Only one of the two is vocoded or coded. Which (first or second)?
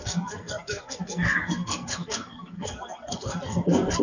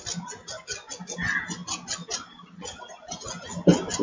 first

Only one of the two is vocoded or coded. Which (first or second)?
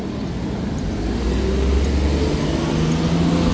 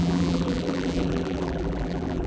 second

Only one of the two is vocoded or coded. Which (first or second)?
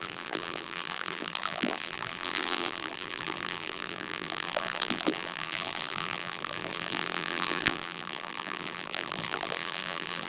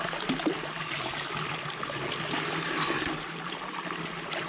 first